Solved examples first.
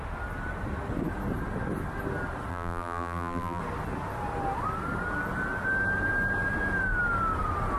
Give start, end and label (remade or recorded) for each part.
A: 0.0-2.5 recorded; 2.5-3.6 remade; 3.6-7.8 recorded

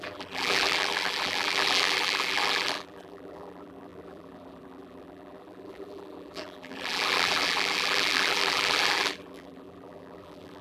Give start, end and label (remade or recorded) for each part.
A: 0.0-10.6 remade